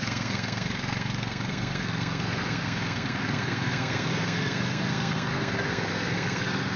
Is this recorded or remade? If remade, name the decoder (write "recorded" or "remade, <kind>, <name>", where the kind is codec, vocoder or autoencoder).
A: remade, codec, SNAC